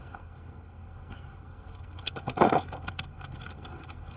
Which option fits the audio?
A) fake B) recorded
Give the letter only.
A